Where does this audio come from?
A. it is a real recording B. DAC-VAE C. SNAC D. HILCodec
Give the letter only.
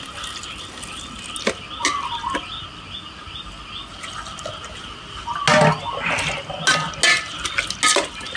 A